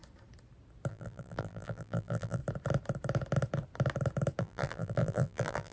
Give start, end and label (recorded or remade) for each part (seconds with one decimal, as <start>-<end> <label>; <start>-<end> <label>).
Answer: 0.0-0.9 recorded; 0.9-2.4 remade; 2.4-4.4 recorded; 4.4-5.7 remade